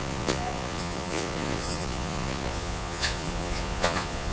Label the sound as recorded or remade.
remade